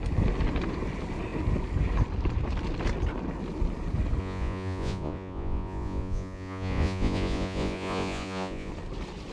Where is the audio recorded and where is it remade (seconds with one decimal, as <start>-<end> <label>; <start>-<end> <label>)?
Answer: 0.0-4.2 recorded; 4.2-8.7 remade; 8.7-9.3 recorded